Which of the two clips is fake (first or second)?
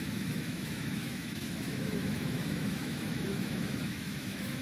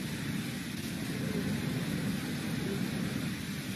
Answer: first